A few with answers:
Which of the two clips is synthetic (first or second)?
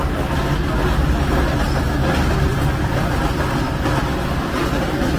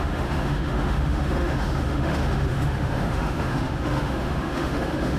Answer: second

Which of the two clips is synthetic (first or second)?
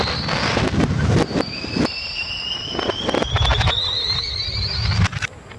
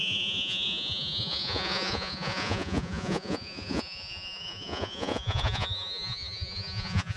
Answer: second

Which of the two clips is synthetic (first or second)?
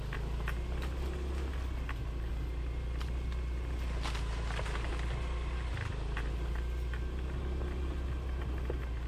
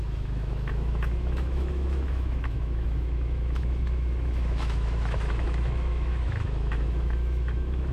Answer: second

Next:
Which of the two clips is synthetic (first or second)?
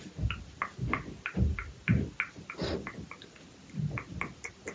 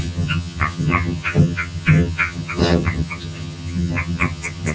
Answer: second